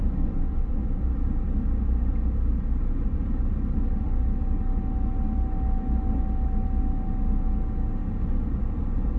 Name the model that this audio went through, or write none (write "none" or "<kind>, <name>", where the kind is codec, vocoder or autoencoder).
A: none